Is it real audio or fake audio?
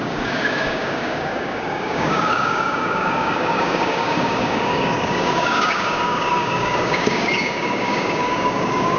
fake